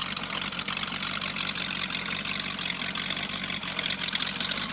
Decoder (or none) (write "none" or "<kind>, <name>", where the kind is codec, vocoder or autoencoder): none